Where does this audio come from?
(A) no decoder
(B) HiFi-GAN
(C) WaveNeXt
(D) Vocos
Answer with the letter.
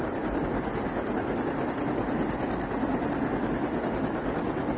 A